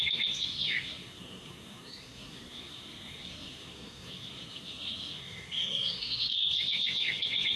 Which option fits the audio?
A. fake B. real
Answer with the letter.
A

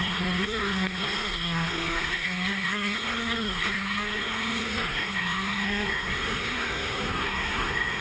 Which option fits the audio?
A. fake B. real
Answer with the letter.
A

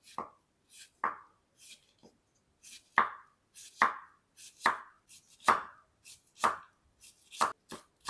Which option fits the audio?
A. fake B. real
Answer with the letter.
B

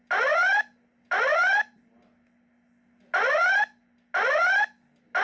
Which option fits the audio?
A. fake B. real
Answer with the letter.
B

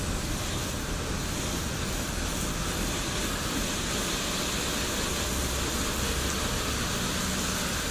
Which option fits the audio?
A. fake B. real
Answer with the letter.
B